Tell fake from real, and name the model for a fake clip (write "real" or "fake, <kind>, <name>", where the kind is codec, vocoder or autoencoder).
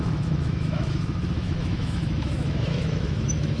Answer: fake, autoencoder, DAC-VAE